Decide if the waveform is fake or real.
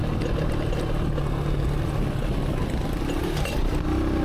real